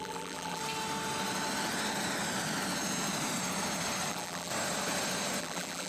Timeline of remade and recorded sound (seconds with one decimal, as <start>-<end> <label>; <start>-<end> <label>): 0.0-0.6 remade; 0.6-4.1 recorded; 4.1-4.5 remade; 4.5-5.4 recorded; 5.4-5.9 remade